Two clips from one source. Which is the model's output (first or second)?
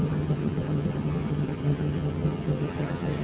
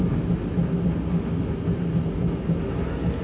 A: first